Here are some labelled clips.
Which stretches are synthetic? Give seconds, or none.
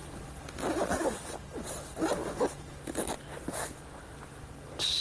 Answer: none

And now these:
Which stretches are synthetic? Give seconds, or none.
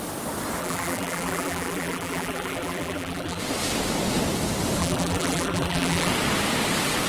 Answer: 0.6-3.4 (vocoder, BigVGAN v2); 4.8-6.1